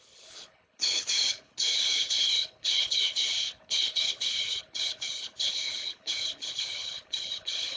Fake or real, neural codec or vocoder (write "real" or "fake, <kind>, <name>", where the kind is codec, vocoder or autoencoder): fake, codec, HILCodec